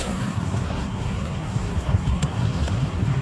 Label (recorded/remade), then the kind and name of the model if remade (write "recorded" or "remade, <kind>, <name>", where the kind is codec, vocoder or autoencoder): remade, codec, SNAC